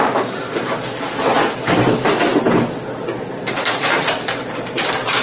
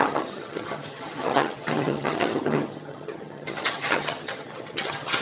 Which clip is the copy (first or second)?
second